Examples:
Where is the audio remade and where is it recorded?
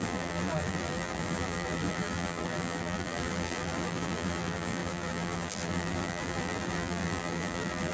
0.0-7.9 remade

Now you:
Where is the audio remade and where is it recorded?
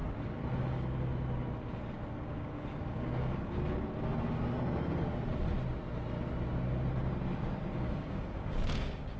0.0-0.6 recorded; 0.6-1.1 remade; 1.1-2.2 recorded; 2.2-3.6 remade; 3.6-7.7 recorded; 7.7-9.2 remade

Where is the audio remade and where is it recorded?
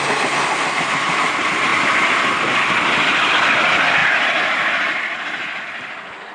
0.0-6.3 recorded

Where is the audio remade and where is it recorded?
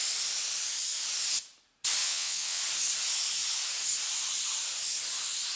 0.0-2.0 recorded; 2.0-2.6 remade; 2.6-5.6 recorded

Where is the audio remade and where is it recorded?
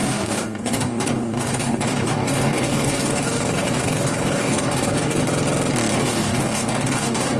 0.0-5.2 remade; 5.2-6.0 recorded; 6.0-7.4 remade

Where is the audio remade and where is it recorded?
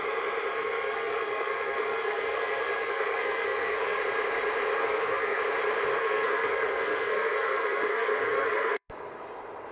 0.0-0.5 recorded; 0.5-4.0 remade; 4.0-4.8 recorded; 4.8-5.4 remade; 5.4-6.0 recorded; 6.0-8.9 remade; 8.9-9.7 recorded